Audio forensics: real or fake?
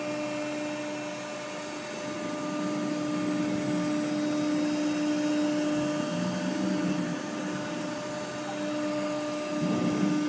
real